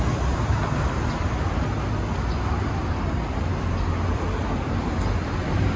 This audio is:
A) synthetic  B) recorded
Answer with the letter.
B